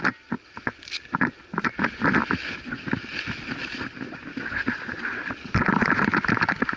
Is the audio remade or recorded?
recorded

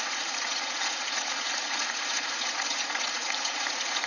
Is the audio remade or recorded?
remade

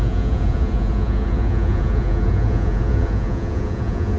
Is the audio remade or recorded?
remade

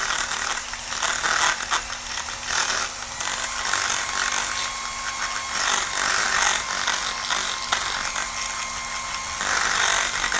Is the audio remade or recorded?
recorded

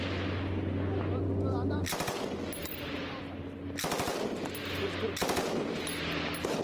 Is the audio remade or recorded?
recorded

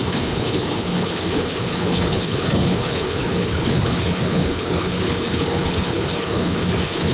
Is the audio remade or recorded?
remade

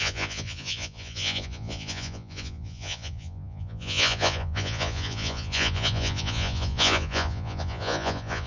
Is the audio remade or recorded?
remade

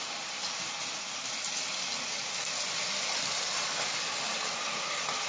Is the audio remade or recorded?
recorded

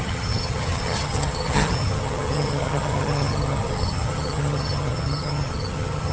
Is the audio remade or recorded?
remade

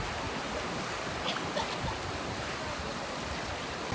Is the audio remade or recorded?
recorded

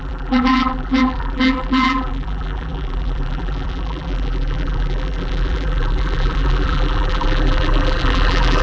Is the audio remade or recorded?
remade